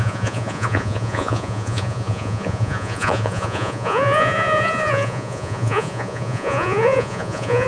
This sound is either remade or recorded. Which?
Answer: remade